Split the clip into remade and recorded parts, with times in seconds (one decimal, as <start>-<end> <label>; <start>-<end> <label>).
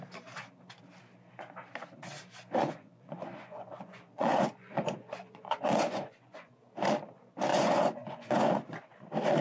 0.0-2.6 recorded; 2.6-6.6 remade; 6.6-7.5 recorded; 7.5-8.5 remade; 8.5-9.4 recorded